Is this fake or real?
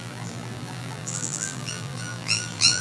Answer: fake